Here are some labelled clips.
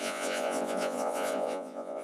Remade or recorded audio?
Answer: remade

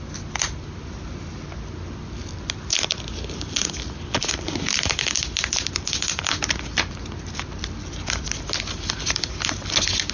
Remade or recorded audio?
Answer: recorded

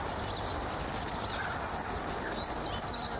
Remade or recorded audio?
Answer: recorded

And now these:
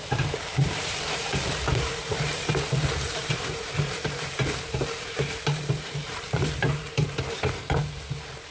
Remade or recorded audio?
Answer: remade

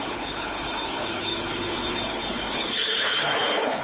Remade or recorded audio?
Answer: remade